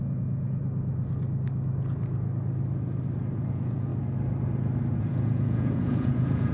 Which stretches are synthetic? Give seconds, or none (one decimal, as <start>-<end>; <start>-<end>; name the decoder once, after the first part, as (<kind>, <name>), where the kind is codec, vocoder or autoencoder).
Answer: 0.0-0.6 (vocoder, Vocos); 3.5-3.9; 5.0-6.5